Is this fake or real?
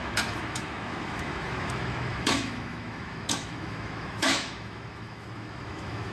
fake